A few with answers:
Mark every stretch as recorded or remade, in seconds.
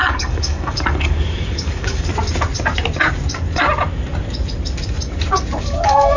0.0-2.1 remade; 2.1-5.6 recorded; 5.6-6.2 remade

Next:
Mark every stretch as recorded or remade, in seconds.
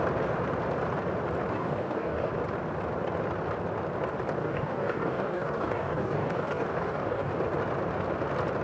0.0-1.5 recorded; 1.5-2.3 remade; 2.3-4.4 recorded; 4.4-7.3 remade; 7.3-8.6 recorded